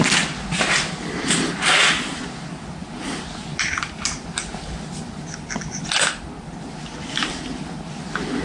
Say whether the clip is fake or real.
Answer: real